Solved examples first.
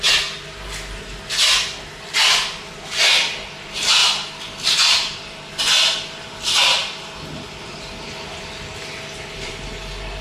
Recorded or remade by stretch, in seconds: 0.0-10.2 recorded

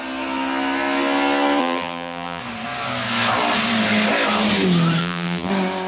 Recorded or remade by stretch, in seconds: 0.0-1.6 recorded; 1.6-2.4 remade; 2.4-5.0 recorded; 5.0-5.5 remade; 5.5-5.9 recorded

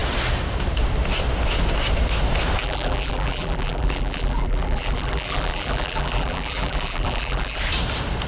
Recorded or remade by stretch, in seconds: 0.0-2.6 recorded; 2.6-7.6 remade; 7.6-8.3 recorded

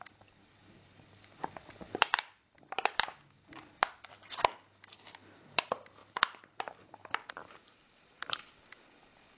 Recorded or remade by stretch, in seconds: 0.0-0.6 recorded; 0.6-1.5 remade; 1.5-6.0 recorded; 6.0-8.3 remade; 8.3-9.4 recorded

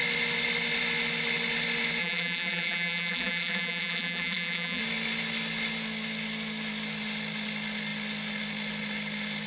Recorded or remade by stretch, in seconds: 0.0-2.0 recorded; 2.0-4.8 remade; 4.8-9.5 recorded

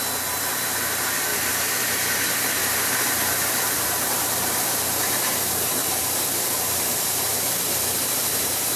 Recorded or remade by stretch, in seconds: 0.0-1.3 recorded; 1.3-2.2 remade; 2.2-2.6 recorded; 2.6-4.2 remade; 4.2-5.0 recorded; 5.0-8.8 remade